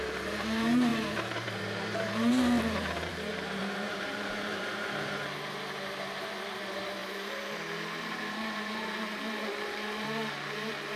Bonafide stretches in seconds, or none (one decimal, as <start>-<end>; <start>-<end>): none